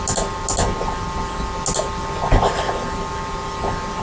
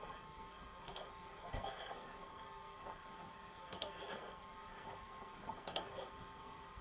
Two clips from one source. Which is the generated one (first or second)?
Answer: second